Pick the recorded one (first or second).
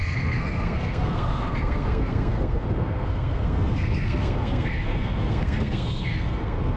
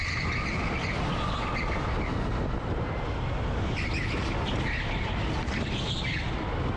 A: second